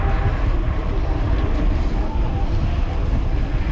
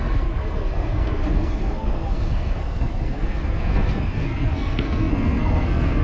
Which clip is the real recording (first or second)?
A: first